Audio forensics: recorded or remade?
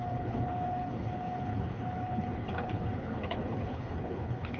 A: remade